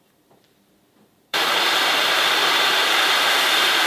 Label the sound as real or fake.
fake